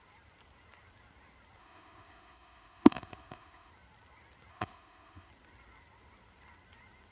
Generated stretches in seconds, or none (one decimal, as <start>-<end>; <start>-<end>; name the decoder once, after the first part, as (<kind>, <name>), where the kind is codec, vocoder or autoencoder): 1.6-3.7 (autoencoder, DAC-VAE); 4.5-5.3